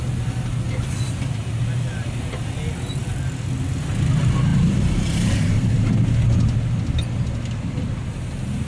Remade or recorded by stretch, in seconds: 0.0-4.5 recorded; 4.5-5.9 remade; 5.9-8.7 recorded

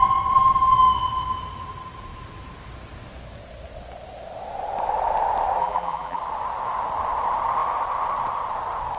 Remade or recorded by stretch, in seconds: 0.0-5.6 recorded; 5.6-6.2 remade; 6.2-9.0 recorded